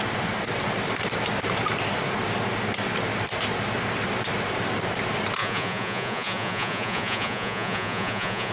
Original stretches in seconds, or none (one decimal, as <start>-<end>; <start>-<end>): 0.0-5.4